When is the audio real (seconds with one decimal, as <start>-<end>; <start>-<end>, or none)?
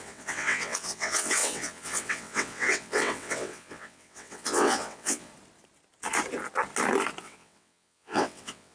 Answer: 5.3-7.2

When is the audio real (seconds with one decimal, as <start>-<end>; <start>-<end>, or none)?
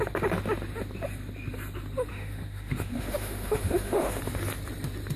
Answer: 0.0-2.1; 4.2-5.2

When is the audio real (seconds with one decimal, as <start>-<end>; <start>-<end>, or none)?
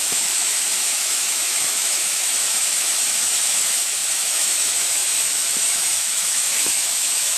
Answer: none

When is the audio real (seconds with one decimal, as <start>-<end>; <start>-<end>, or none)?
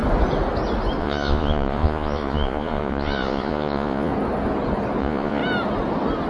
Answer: 0.0-1.0; 4.1-5.0; 5.4-6.3